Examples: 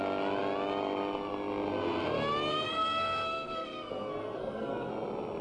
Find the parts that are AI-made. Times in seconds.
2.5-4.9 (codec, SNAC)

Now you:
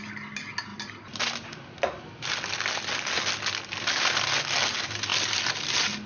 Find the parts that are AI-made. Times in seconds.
none

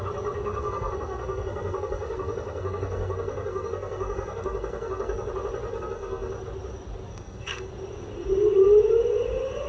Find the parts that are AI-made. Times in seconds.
0.4-5.3 (codec, SNAC); 5.7-6.3; 7.1-7.7

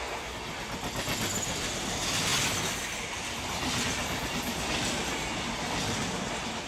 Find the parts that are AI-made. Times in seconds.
none

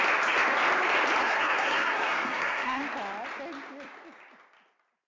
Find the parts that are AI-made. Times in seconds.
1.2-2.8 (codec, SNAC)